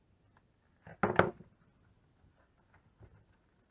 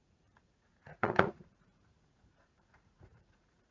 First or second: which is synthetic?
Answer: second